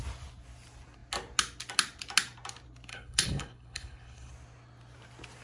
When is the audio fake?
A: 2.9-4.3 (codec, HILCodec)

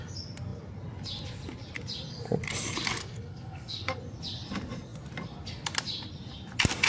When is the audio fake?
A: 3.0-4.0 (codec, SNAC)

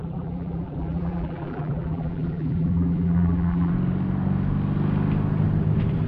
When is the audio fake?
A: 0.0-3.7 (vocoder, BigVGAN v2)